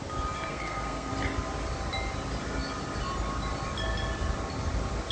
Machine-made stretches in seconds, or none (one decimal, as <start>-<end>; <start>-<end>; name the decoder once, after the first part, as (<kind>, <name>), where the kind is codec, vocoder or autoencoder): 0.5-1.1 (codec, SNAC)